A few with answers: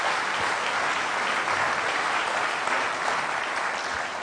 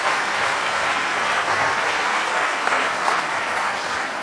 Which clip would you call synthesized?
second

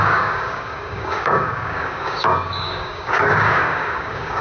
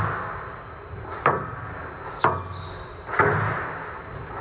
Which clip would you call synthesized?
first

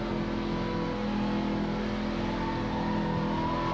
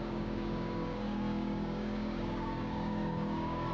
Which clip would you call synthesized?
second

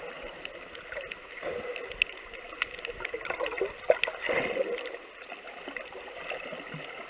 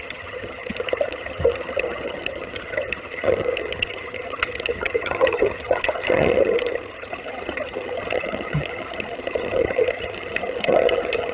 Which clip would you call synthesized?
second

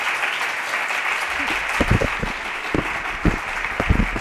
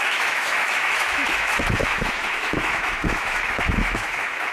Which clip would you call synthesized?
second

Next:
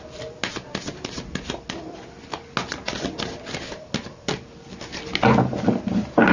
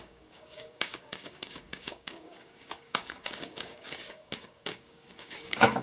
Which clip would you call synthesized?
second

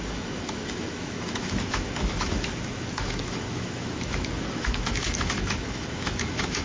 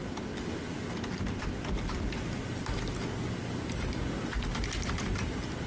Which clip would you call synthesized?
first